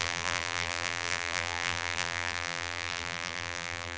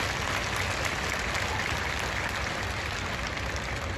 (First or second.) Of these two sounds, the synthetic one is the first